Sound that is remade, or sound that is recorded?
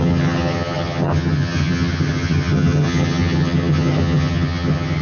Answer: remade